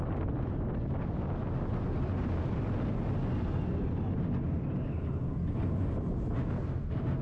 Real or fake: real